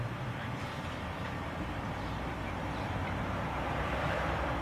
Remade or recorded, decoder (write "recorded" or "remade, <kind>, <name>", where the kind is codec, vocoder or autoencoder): remade, vocoder, BigVGAN v2